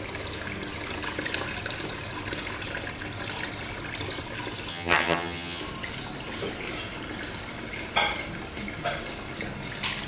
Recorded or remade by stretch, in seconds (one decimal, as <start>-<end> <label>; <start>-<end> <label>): 0.0-4.7 recorded; 4.7-5.6 remade; 5.6-10.1 recorded